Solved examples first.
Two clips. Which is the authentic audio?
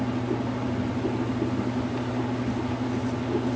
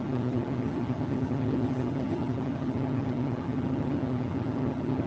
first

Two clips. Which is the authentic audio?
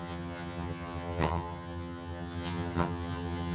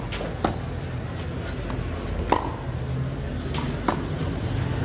second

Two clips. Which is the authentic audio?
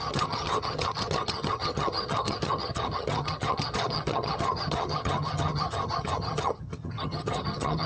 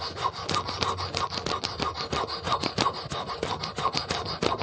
second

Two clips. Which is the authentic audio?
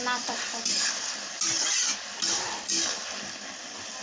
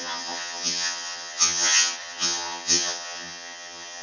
first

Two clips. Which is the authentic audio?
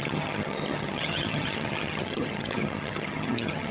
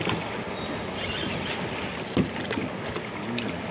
second